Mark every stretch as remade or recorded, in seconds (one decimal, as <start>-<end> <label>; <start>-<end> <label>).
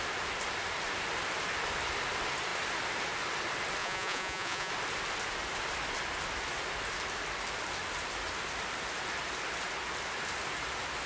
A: 0.0-3.8 recorded; 3.8-4.7 remade; 4.7-11.1 recorded